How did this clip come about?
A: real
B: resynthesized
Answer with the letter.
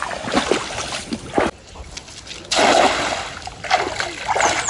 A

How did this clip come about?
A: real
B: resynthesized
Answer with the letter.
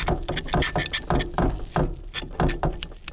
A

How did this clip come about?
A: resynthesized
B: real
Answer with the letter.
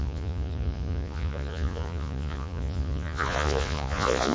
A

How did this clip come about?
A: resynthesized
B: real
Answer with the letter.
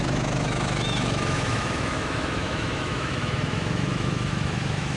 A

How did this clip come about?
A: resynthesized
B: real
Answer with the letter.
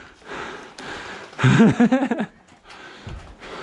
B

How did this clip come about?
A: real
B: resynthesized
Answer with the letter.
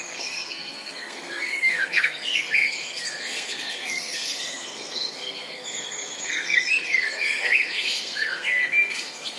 B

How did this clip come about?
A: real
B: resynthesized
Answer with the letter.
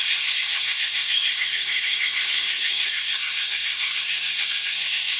B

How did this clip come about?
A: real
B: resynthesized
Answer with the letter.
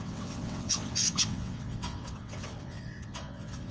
B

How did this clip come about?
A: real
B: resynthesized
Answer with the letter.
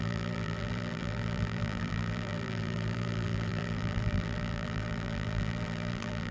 B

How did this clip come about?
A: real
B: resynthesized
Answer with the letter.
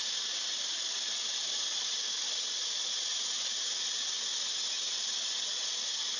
A